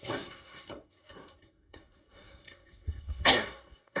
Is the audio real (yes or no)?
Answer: no